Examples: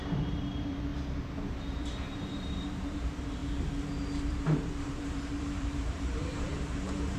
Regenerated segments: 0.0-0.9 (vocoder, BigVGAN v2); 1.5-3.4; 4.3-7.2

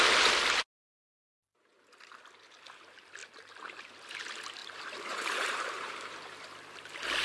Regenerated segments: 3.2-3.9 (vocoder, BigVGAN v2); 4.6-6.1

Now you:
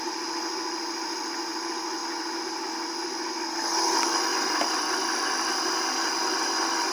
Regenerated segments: 0.0-2.0 (vocoder, BigVGAN v2); 2.5-4.3; 6.4-6.9

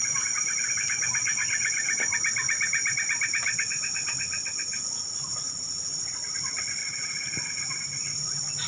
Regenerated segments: 1.3-3.5 (vocoder, BigVGAN v2); 5.3-6.2; 6.8-7.8

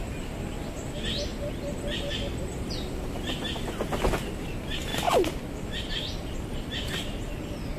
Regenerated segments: 1.3-2.7 (vocoder, BigVGAN v2); 4.9-7.8

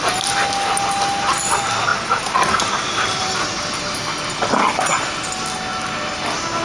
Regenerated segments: 1.9-3.3 (vocoder, BigVGAN v2); 5.7-6.6

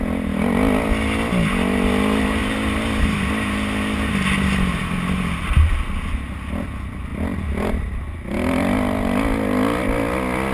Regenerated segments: 7.1-7.7 (vocoder, BigVGAN v2)

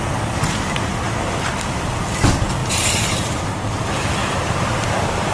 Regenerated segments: 2.6-3.4 (vocoder, BigVGAN v2); 4.2-5.3